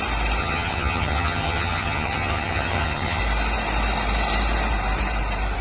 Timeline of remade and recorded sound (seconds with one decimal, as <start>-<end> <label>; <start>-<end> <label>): 0.0-0.4 recorded; 0.4-3.2 remade; 3.2-5.6 recorded